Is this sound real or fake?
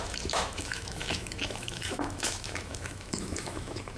fake